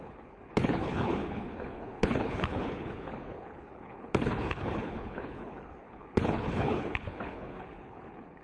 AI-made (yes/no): yes